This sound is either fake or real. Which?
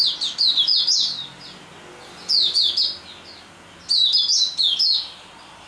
real